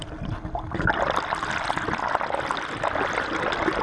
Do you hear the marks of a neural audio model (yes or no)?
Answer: no